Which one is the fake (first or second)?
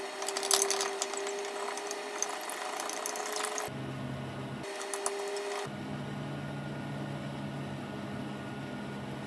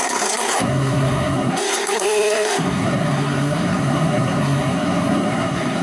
second